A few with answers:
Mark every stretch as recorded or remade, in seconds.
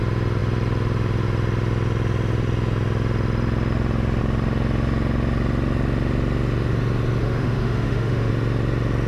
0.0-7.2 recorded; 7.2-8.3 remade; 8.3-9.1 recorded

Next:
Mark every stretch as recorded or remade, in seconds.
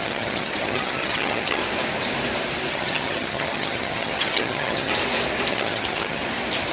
0.0-1.6 remade; 1.6-2.7 recorded; 2.7-4.9 remade; 4.9-5.5 recorded; 5.5-6.2 remade; 6.2-6.7 recorded